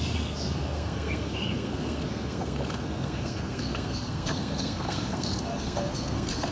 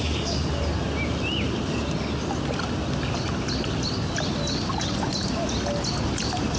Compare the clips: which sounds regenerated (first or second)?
first